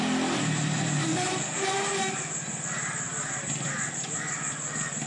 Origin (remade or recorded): recorded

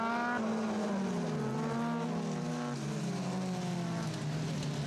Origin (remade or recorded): recorded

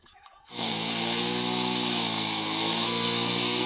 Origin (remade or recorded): remade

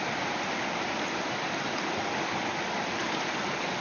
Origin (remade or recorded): recorded